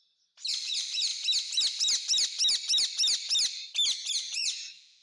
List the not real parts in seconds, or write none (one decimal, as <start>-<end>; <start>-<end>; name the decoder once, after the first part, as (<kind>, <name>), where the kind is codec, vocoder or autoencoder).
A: 0.0-1.1 (vocoder, BigVGAN v2); 4.1-5.0